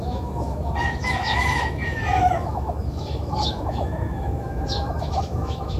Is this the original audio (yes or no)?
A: no